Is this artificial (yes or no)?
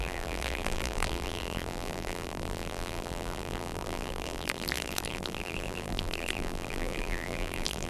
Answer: yes